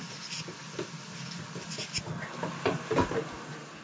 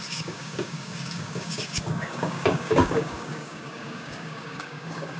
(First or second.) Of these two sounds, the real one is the first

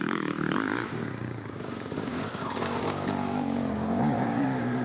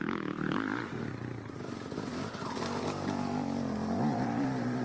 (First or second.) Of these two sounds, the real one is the second